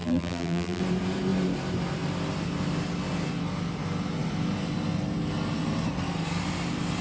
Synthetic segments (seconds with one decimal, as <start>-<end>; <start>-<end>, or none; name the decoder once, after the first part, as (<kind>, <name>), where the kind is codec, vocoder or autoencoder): 0.0-0.8 (vocoder, BigVGAN v2)